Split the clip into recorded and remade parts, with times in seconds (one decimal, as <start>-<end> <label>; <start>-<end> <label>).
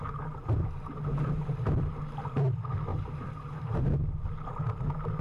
0.0-2.0 remade; 2.0-2.9 recorded; 2.9-4.0 remade; 4.0-5.2 recorded